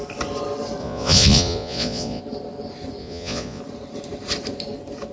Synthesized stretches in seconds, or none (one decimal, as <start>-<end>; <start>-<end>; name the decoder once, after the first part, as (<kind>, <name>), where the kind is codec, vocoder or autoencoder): 0.8-2.2 (vocoder, Vocos); 3.0-3.6